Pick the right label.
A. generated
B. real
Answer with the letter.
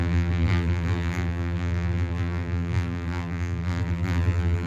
A